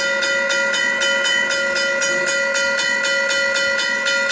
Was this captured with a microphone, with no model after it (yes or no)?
yes